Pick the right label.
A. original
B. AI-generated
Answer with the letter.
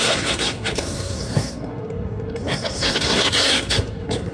B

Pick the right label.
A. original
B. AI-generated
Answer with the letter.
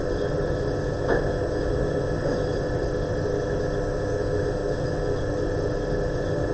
A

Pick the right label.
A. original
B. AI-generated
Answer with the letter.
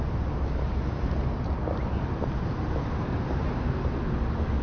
A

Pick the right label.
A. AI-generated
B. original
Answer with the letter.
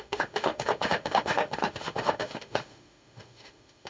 A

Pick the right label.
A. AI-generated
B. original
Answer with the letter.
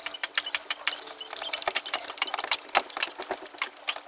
B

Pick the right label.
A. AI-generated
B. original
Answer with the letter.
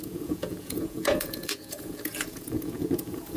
A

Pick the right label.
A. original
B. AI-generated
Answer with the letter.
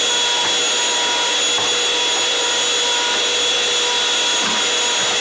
A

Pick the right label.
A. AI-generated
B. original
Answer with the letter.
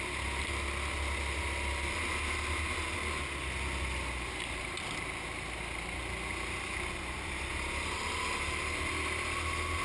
B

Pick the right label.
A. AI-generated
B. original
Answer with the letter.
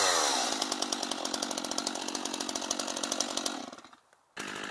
B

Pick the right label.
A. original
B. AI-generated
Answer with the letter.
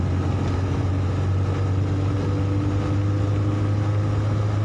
A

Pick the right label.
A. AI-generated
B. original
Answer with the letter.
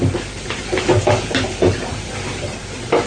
B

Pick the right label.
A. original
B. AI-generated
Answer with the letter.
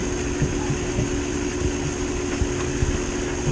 A